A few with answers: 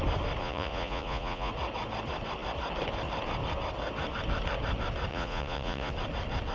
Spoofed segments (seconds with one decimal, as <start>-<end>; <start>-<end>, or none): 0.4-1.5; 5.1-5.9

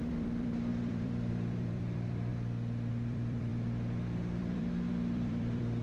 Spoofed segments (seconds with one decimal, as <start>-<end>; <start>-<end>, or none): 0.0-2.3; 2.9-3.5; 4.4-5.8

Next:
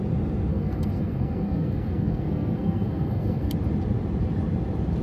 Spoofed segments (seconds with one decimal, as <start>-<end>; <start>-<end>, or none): 0.5-3.5